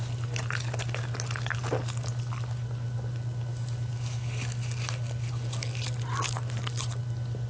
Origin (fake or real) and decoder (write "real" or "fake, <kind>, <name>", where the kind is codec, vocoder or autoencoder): real